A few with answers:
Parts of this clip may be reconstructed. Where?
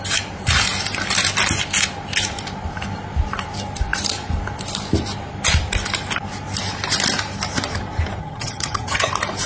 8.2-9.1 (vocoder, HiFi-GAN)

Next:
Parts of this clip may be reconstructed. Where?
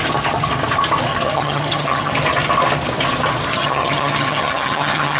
1.1-2.1 (vocoder, HiFi-GAN); 3.5-5.2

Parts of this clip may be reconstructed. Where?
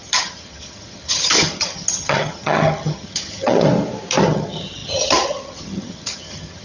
0.0-3.7 (vocoder, HiFi-GAN); 4.2-6.6